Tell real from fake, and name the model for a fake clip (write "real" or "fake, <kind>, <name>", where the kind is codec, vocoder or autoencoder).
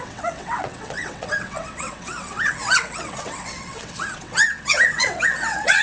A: fake, vocoder, WaveNeXt